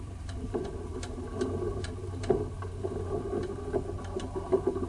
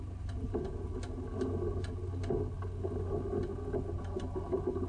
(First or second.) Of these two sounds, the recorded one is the second